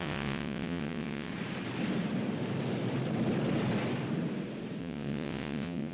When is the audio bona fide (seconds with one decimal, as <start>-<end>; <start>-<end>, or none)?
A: 1.3-4.8

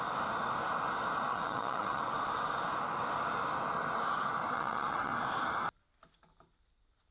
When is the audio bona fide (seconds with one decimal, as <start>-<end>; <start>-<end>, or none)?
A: 0.0-1.3; 2.0-4.5; 5.1-7.1

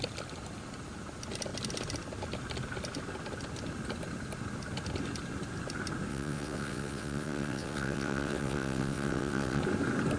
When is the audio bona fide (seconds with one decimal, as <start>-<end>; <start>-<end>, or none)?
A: 0.0-6.1; 9.6-10.2

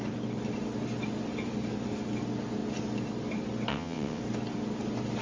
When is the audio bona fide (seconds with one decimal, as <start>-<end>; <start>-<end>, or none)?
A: 0.0-3.7; 4.2-5.2

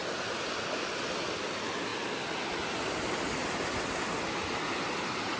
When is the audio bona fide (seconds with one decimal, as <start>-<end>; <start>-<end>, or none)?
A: 0.0-5.4

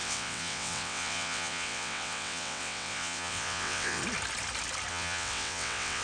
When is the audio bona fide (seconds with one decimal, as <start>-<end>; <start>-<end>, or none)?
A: 4.0-4.9

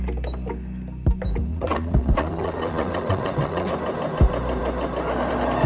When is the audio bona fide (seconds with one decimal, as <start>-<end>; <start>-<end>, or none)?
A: 0.0-1.5; 3.7-5.7

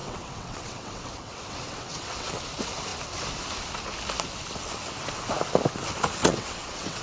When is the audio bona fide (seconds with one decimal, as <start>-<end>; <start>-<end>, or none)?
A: 2.3-6.2